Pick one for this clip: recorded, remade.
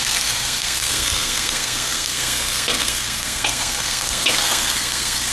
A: remade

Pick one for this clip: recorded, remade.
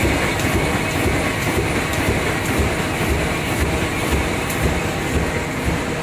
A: recorded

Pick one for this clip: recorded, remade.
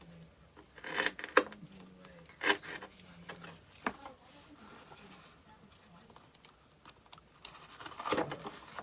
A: recorded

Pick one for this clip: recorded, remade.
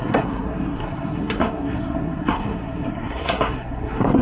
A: remade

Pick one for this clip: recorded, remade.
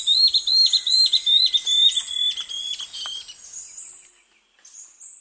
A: recorded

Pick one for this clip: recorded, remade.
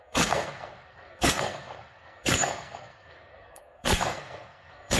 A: remade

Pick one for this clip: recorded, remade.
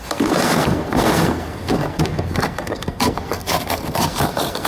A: remade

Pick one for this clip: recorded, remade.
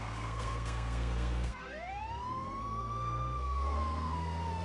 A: remade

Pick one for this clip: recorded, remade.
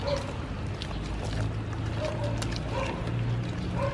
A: recorded